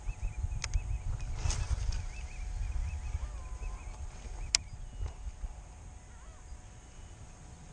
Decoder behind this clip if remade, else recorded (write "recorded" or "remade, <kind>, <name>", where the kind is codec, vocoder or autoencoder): recorded